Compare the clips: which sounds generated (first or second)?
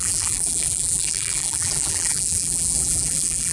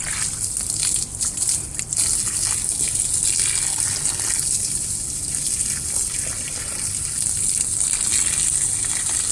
first